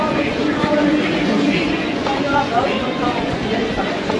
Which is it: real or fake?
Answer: fake